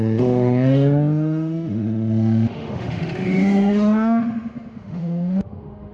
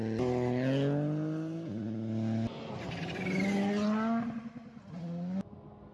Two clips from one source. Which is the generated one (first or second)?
first